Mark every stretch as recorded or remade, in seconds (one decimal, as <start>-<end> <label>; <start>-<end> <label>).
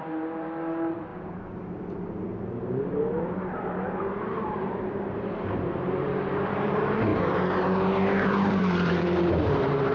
0.0-7.1 remade; 7.1-8.5 recorded; 8.5-9.9 remade